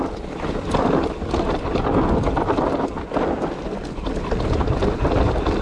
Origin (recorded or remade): recorded